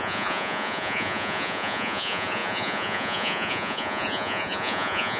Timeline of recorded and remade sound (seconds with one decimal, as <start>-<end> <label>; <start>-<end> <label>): 0.0-5.2 remade